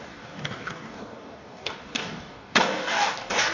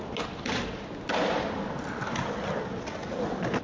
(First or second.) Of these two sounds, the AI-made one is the first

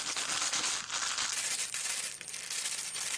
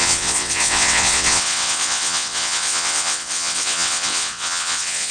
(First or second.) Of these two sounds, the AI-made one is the second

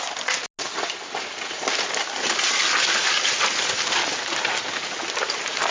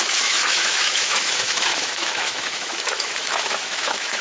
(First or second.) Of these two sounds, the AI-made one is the second